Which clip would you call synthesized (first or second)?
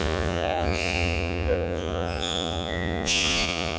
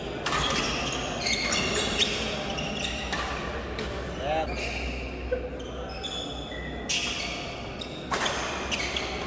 first